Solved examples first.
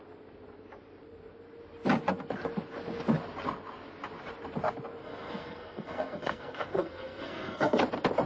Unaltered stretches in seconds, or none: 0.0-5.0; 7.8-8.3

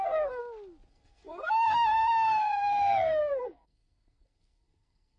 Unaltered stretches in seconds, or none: 0.4-0.9